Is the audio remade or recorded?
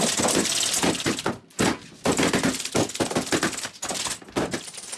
recorded